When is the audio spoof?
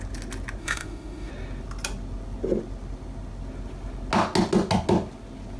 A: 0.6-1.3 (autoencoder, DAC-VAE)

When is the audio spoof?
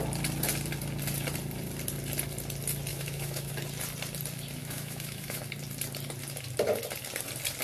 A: 2.9-3.5 (autoencoder, DAC-VAE); 4.6-5.4